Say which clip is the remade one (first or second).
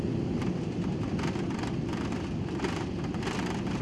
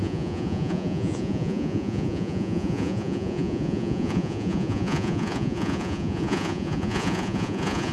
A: second